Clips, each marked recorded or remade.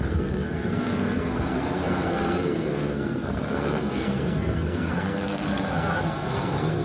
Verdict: remade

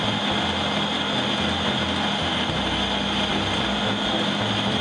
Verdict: recorded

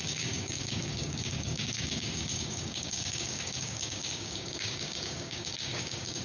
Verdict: remade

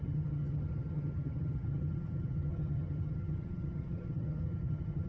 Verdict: remade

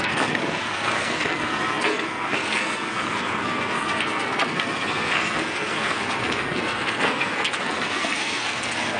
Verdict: remade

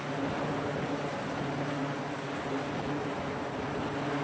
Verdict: recorded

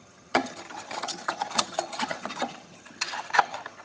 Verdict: remade